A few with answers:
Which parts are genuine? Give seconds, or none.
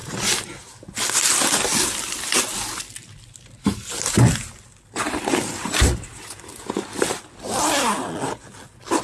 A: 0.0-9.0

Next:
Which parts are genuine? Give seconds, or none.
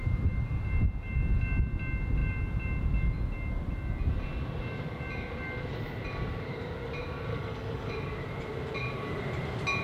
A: 0.0-7.3; 7.9-9.8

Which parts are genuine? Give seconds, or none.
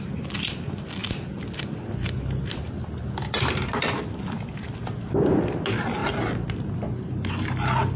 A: 0.0-8.0